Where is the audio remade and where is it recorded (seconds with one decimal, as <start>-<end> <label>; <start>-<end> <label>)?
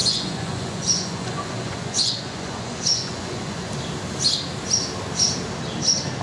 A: 0.0-3.7 remade; 3.7-6.2 recorded